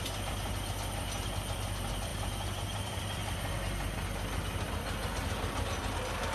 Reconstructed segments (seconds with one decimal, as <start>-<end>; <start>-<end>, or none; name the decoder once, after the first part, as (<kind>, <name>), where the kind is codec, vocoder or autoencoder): none